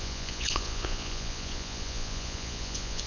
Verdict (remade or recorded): remade